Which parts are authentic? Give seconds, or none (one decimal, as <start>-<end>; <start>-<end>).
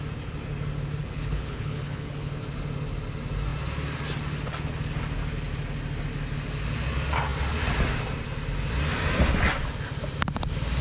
0.0-1.0; 2.3-10.8